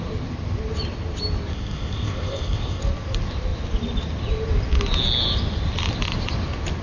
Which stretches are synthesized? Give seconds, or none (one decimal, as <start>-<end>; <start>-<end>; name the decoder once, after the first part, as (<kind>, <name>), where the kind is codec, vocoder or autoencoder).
1.5-2.8 (codec, ZipCodec)